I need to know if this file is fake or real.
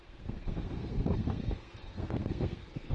fake